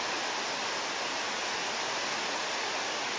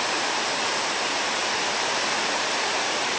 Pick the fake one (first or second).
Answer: second